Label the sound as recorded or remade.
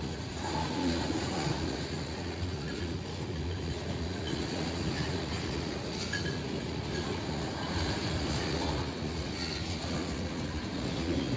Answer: remade